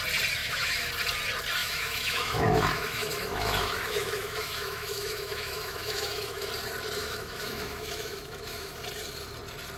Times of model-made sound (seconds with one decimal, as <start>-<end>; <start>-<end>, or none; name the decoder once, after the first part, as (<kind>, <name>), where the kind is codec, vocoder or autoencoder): 0.4-0.9 (autoencoder, DAC-VAE); 1.6-6.5; 7.0-8.8